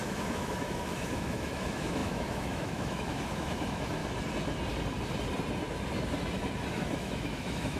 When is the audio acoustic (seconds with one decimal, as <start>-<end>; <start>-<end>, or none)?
4.0-6.7